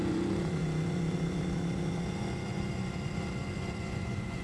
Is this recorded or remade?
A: remade